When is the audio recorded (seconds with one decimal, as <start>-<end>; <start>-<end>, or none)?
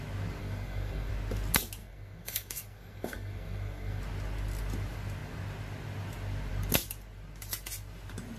0.0-0.4; 1.1-1.8; 4.0-8.4